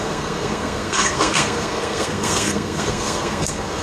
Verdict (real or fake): fake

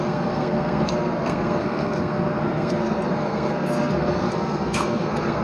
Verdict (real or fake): fake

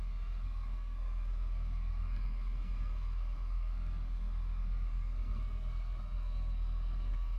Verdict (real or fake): fake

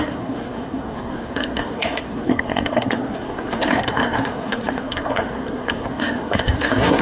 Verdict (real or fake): fake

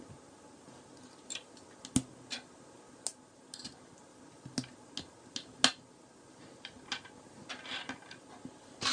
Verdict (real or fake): real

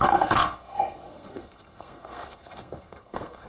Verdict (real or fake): fake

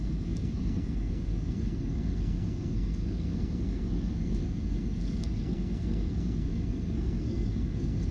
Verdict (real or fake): fake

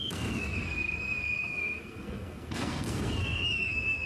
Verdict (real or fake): fake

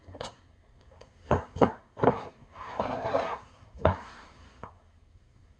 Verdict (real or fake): fake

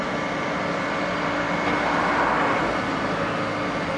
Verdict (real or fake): real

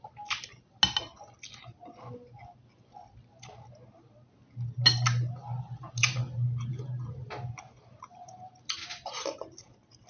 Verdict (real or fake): real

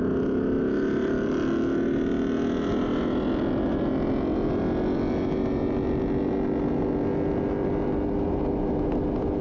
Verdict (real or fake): real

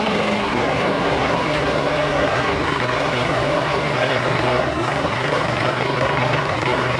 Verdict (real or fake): fake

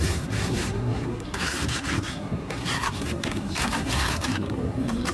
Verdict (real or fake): fake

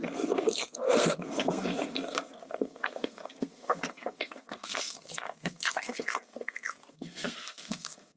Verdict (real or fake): fake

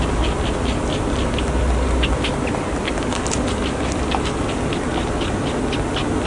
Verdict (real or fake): real